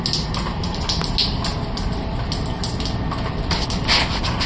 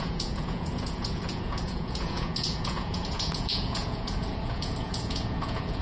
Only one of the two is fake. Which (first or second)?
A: second